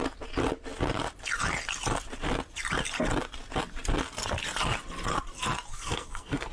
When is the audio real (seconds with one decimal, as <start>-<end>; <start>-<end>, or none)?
0.0-5.7